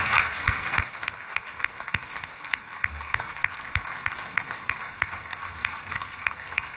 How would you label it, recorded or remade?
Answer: remade